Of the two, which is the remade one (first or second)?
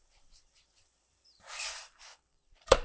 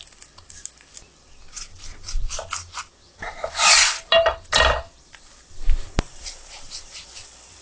first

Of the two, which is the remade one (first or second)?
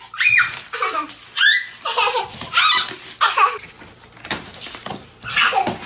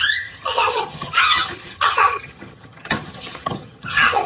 second